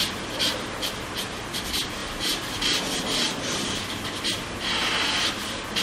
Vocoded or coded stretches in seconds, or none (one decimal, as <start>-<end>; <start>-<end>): 2.0-3.0